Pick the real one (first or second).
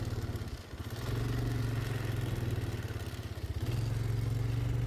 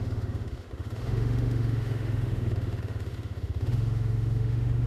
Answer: first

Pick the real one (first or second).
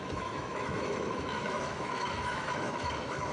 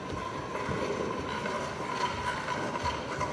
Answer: second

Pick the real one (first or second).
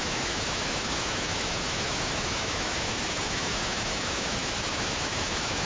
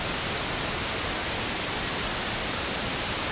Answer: second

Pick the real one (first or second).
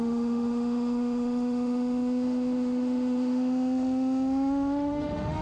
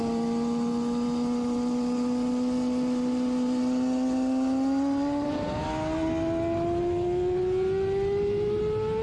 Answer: second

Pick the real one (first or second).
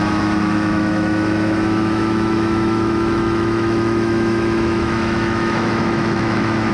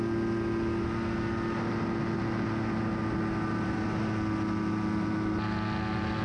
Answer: second